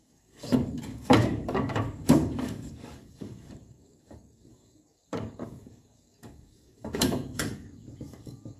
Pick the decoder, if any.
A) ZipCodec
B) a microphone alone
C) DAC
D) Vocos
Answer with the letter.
C